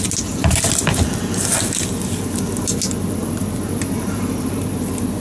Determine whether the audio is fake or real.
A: real